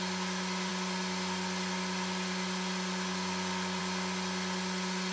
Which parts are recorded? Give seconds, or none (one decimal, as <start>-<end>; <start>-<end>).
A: 0.0-5.1